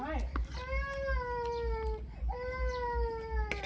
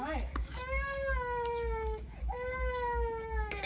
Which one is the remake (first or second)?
second